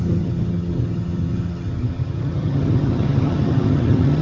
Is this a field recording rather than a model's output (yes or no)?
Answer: no